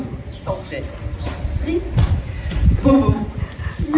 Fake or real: real